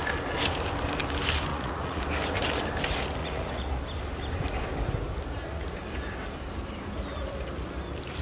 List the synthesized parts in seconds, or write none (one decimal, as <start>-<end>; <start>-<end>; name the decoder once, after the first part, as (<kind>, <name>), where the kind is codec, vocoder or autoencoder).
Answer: 1.5-2.0 (vocoder, Vocos); 3.2-3.8